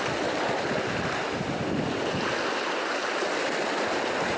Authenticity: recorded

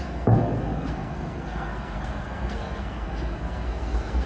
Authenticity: remade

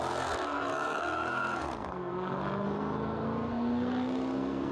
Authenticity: remade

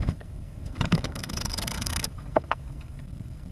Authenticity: remade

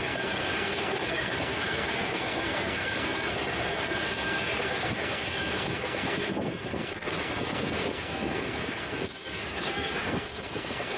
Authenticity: remade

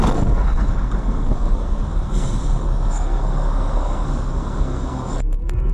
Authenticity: remade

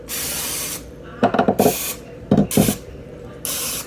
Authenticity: recorded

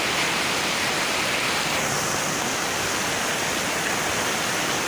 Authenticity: recorded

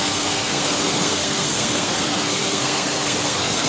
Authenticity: remade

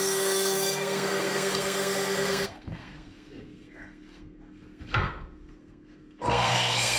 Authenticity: remade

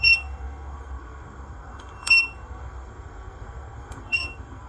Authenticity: remade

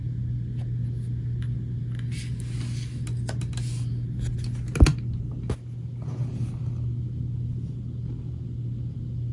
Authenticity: recorded